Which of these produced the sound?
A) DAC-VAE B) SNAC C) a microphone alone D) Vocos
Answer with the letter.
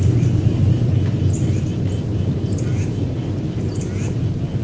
C